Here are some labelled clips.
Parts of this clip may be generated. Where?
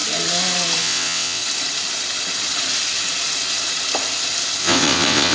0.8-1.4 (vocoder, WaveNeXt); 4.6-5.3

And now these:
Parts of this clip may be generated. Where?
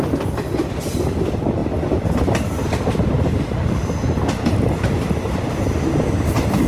none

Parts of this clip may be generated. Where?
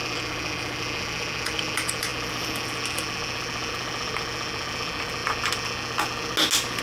none